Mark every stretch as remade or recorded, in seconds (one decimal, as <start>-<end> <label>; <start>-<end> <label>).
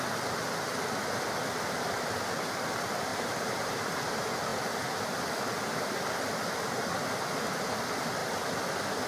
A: 0.0-3.1 recorded; 3.1-3.8 remade; 3.8-9.1 recorded